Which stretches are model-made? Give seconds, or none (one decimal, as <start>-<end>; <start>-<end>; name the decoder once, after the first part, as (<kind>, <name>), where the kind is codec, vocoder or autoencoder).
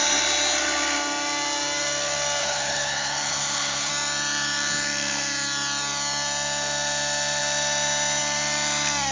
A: 2.4-3.9 (codec, HILCodec)